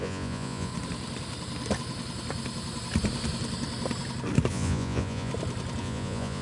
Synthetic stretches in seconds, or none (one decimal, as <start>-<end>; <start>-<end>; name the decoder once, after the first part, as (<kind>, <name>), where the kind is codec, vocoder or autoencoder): 0.0-0.7 (vocoder, Vocos); 4.5-5.3; 5.8-6.4